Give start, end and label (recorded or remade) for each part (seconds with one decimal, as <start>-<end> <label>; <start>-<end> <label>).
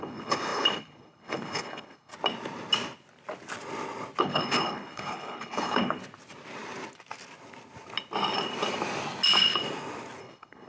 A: 0.0-2.1 remade; 2.1-4.2 recorded; 4.2-6.0 remade; 6.0-10.2 recorded; 10.2-10.7 remade